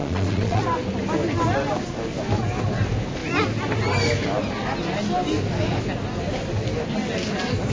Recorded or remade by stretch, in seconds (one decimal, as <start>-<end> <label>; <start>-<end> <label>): 0.0-0.6 remade; 0.6-7.7 recorded